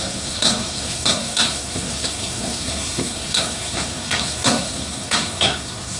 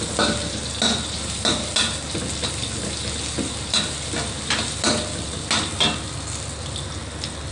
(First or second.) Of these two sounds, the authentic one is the second